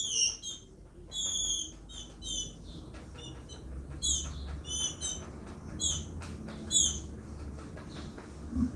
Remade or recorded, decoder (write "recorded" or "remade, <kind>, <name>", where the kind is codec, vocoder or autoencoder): recorded